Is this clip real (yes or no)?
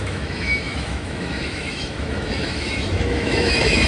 no